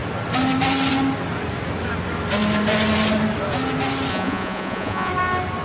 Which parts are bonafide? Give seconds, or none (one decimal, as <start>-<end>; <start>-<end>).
0.0-4.1; 5.1-5.6